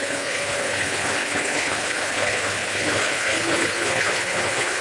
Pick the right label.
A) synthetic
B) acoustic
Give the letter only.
A